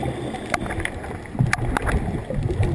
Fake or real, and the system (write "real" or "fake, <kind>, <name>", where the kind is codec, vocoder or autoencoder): real